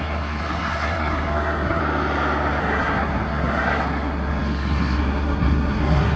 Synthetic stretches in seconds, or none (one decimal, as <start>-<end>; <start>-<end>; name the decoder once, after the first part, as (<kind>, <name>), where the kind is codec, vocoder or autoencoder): 0.0-1.8 (codec, SNAC); 2.6-6.2